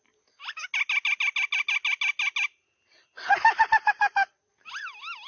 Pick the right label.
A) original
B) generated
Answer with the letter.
A